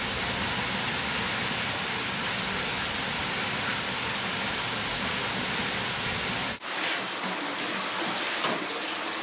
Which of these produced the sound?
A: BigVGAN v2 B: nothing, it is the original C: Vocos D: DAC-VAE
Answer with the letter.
B